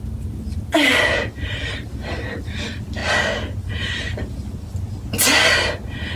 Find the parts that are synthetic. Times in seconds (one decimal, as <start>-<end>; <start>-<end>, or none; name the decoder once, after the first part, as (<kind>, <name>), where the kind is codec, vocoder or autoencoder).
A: none